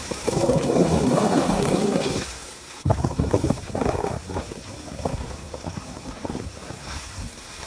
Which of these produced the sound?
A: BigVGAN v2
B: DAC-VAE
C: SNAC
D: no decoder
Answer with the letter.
C